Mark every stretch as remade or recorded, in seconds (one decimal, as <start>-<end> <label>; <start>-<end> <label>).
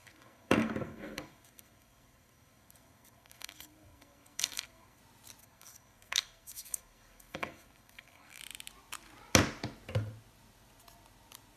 0.0-5.0 remade; 5.0-5.4 recorded; 5.4-8.4 remade; 8.4-11.6 recorded